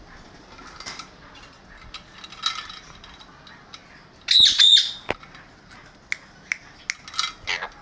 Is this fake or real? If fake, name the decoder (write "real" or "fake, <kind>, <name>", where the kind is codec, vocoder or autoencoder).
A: real